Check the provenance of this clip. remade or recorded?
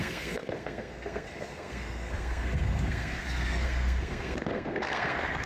remade